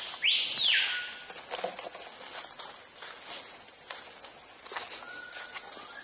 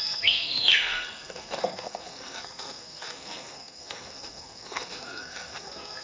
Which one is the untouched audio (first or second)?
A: first